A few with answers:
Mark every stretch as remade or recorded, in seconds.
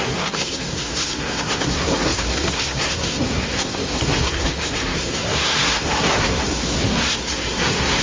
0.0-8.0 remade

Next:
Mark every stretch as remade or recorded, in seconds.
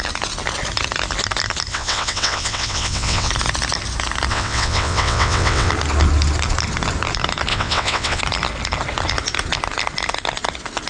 0.0-1.7 recorded; 1.7-3.3 remade; 3.3-4.3 recorded; 4.3-5.7 remade; 5.7-7.5 recorded; 7.5-8.2 remade; 8.2-10.9 recorded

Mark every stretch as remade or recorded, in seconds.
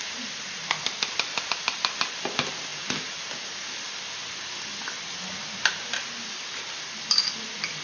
0.0-7.8 recorded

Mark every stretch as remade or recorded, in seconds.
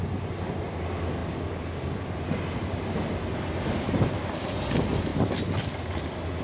0.0-6.4 recorded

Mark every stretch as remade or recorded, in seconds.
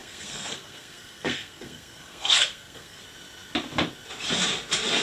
0.0-3.0 remade; 3.0-5.0 recorded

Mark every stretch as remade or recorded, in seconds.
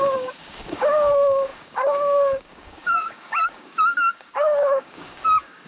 0.0-5.7 remade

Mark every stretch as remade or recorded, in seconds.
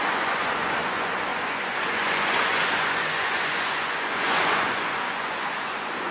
0.0-6.1 remade